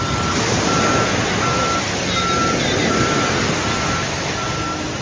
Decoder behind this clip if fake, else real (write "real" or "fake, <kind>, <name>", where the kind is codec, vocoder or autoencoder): real